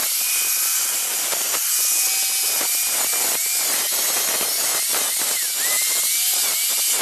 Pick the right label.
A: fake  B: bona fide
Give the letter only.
B